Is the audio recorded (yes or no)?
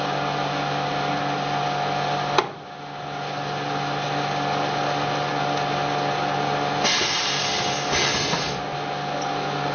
yes